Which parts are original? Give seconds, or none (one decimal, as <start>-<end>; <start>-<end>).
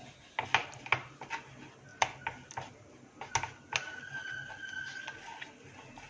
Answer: 0.0-6.1